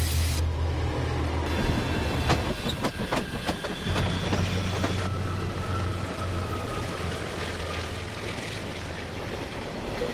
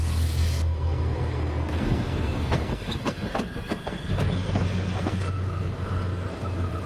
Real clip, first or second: first